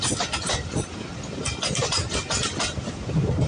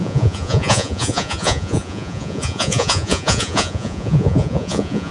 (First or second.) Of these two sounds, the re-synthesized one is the second